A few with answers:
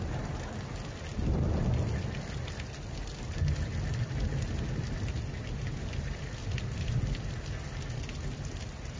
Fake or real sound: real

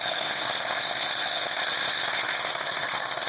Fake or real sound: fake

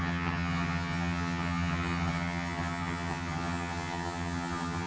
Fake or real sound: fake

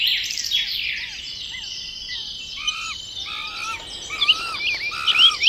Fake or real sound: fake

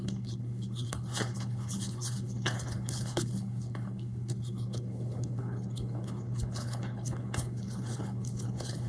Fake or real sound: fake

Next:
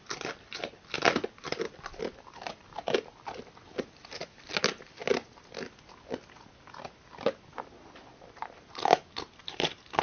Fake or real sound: real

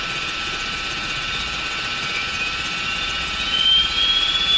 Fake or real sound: real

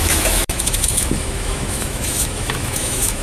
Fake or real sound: fake